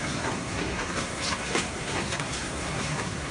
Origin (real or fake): fake